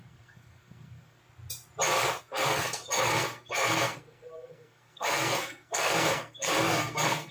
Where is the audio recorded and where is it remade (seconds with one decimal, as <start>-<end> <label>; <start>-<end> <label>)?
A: 0.0-1.2 remade; 1.2-2.2 recorded; 2.2-7.3 remade